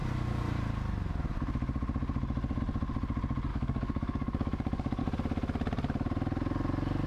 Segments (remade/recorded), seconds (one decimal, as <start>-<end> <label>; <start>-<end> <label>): 0.0-3.5 recorded; 3.5-5.0 remade; 5.0-7.1 recorded